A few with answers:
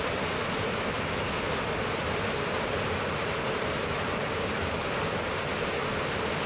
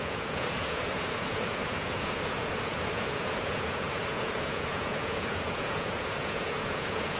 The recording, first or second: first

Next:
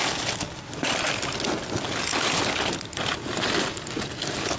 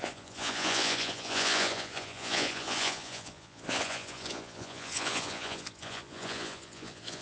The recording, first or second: first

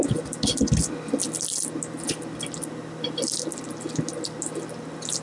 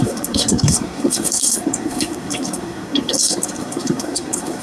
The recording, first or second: first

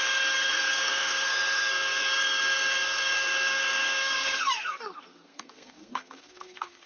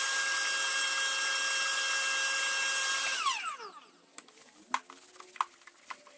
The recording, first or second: second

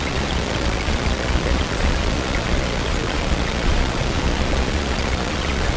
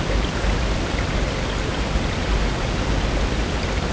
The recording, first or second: second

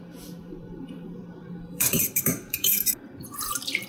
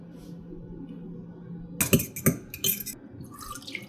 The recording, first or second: second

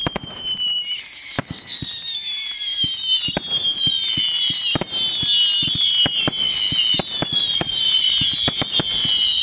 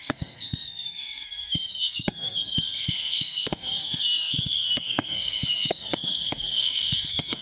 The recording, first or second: first